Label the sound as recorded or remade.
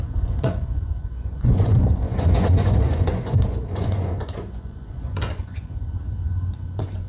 remade